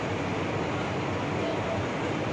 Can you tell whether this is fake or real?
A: real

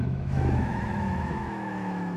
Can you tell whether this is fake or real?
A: fake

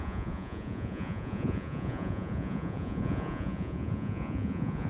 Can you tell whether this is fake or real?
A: fake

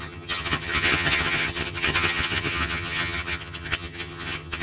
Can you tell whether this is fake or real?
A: fake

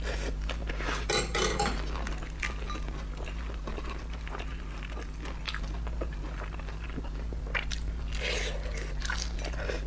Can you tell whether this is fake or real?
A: real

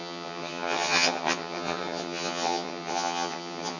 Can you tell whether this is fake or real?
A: fake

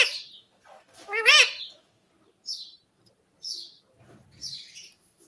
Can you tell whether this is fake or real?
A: real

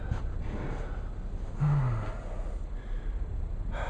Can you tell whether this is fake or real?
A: real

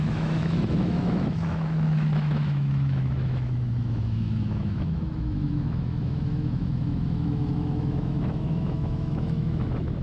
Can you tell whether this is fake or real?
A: fake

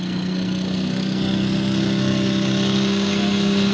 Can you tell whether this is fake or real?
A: fake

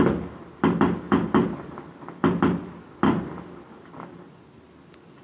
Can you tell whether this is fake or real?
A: real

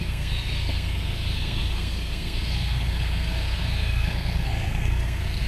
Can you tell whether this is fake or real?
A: fake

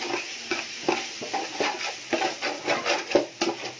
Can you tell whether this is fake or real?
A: real